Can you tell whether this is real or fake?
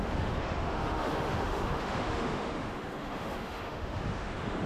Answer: fake